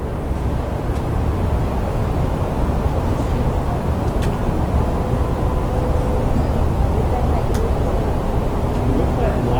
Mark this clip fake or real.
real